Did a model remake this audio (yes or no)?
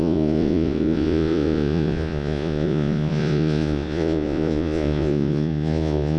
yes